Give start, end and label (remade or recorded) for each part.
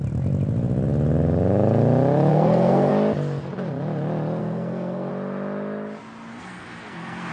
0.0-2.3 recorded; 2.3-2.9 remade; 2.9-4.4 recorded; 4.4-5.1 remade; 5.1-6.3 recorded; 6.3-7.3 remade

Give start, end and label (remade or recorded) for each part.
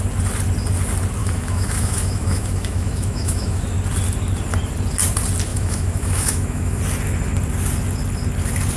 0.0-1.2 recorded; 1.2-3.6 remade; 3.6-5.5 recorded; 5.5-6.8 remade; 6.8-8.8 recorded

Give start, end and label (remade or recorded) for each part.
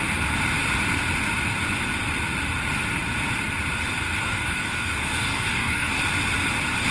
0.0-4.2 recorded; 4.2-6.0 remade; 6.0-6.9 recorded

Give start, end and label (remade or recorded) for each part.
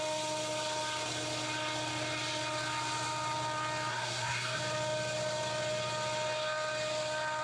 0.0-3.9 recorded; 3.9-4.6 remade; 4.6-7.4 recorded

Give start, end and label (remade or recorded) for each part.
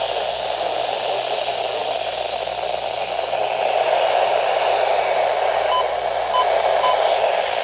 0.0-7.6 recorded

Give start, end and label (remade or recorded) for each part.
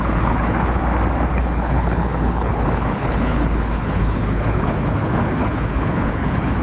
0.0-0.8 remade; 0.8-1.3 recorded; 1.3-6.6 remade